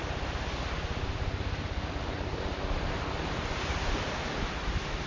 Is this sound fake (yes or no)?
yes